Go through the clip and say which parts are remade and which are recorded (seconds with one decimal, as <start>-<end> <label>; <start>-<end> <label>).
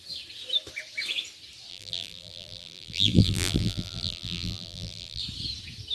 0.0-1.7 recorded; 1.7-5.2 remade; 5.2-5.9 recorded